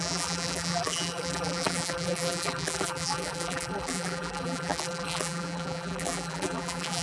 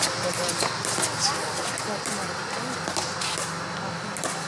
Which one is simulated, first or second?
first